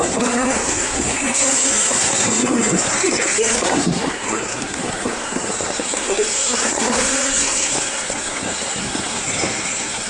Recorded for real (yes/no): no